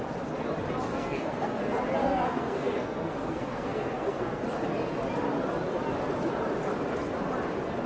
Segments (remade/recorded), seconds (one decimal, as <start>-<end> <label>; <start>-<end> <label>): 0.0-0.9 recorded; 0.9-1.6 remade; 1.6-2.0 recorded; 2.0-4.4 remade; 4.4-7.9 recorded